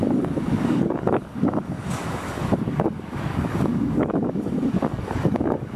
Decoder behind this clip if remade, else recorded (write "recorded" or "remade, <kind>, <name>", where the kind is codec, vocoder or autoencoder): remade, codec, DAC